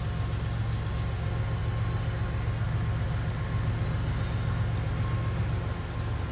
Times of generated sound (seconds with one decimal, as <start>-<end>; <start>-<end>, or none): none